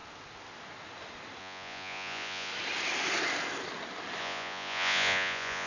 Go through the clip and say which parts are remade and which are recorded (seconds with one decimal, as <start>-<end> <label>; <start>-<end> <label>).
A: 0.0-1.4 recorded; 1.4-2.5 remade; 2.5-4.2 recorded; 4.2-5.7 remade